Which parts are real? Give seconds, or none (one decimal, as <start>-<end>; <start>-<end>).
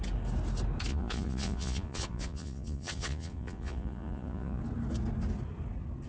0.0-0.9; 4.6-6.1